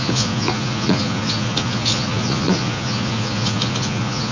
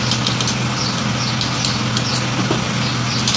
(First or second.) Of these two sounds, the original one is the second